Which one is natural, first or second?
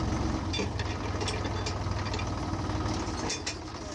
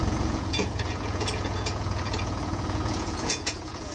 first